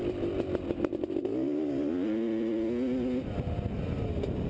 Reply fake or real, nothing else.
real